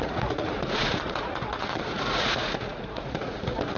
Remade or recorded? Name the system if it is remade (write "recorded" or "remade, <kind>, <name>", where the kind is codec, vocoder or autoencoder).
remade, vocoder, Vocos